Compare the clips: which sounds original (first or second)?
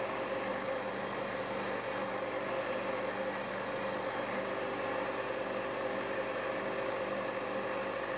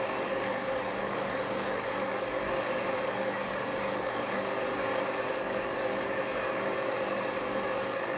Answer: first